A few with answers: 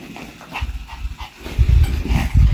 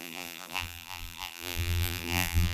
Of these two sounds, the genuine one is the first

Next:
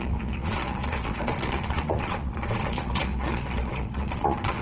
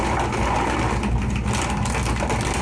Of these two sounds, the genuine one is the second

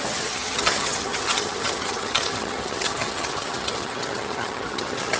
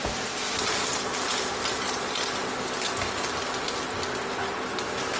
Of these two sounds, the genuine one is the second